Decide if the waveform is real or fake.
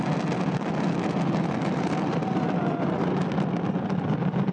real